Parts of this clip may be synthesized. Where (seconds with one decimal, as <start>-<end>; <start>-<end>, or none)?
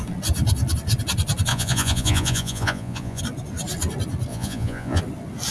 1.5-3.2; 4.3-5.0